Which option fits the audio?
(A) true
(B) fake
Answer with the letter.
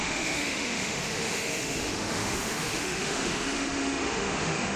B